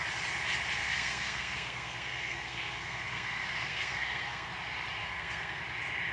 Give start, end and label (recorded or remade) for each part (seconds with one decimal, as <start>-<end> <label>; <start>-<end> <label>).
0.0-0.8 recorded; 0.8-4.5 remade; 4.5-5.0 recorded; 5.0-5.6 remade; 5.6-6.1 recorded